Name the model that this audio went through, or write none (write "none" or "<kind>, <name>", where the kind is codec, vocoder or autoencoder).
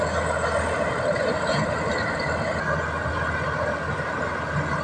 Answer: none